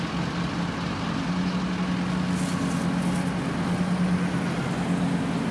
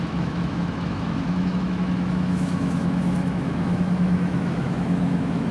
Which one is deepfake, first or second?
second